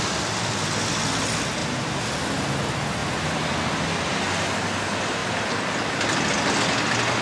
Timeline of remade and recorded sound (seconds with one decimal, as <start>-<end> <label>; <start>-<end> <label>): 0.0-7.2 recorded